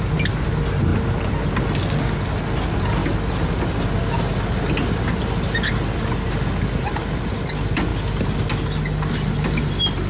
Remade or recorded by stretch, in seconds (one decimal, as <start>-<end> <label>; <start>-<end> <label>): 0.0-10.1 recorded